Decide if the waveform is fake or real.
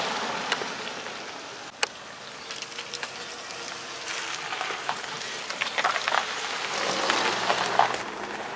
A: real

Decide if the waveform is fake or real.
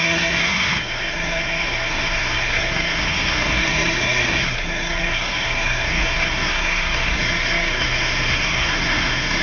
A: fake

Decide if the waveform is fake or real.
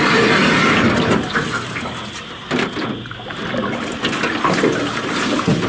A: real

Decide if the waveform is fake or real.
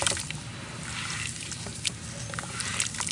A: real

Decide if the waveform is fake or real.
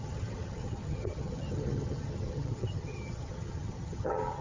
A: fake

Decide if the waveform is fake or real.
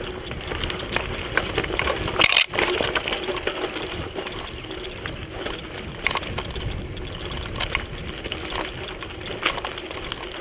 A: real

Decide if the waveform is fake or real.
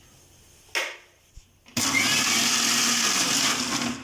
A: real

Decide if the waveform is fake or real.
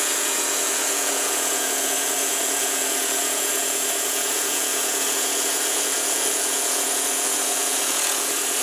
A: fake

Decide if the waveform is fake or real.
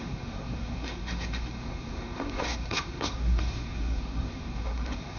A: fake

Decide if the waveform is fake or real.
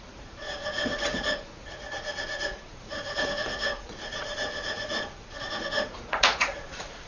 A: fake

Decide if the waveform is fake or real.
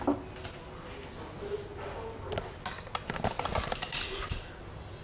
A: real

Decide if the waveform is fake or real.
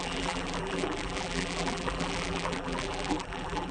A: fake